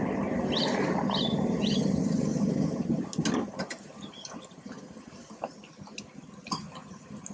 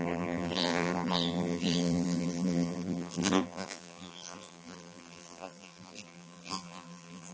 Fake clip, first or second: second